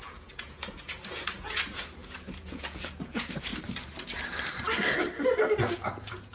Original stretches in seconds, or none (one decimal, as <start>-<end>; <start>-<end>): 3.5-5.6